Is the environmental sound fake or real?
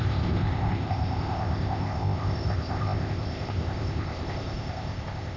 fake